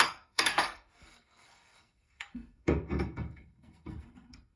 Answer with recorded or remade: remade